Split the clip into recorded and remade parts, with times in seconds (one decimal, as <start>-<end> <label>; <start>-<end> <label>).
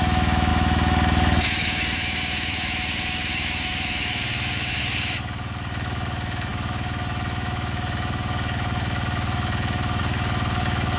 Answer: 0.0-11.0 remade